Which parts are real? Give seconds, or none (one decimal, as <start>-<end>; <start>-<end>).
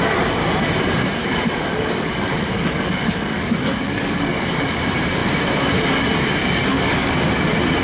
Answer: 0.0-1.2; 4.8-6.7; 7.3-7.8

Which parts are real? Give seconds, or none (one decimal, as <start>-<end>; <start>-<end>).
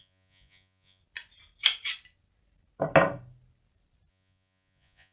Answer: 1.0-4.1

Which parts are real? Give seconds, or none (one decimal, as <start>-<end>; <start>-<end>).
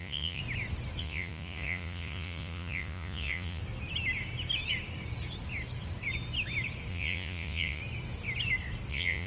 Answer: 0.4-1.0; 3.6-6.9; 7.8-8.9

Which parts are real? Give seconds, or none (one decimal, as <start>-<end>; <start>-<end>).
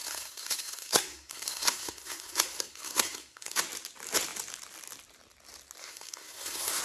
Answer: 3.6-5.8